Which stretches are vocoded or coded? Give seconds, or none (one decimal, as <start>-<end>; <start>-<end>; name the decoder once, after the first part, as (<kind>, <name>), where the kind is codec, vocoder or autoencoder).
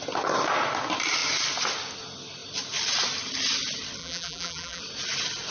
4.0-4.8 (vocoder, BigVGAN v2)